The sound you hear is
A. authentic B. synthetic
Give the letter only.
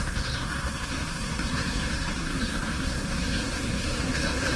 B